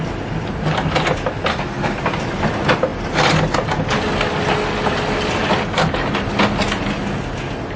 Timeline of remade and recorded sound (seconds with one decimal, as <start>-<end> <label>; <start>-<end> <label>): 0.0-1.5 recorded; 1.5-2.0 remade; 2.0-7.8 recorded